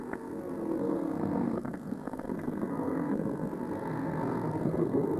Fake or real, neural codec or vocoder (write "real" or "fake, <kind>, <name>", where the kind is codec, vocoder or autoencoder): fake, codec, SNAC